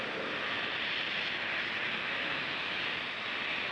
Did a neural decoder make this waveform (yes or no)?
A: no